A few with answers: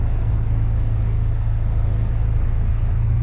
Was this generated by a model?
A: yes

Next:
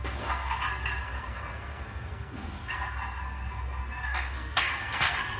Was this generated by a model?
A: yes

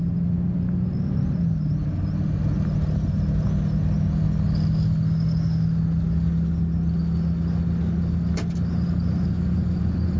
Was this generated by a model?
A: no